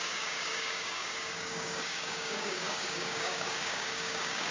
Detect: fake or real fake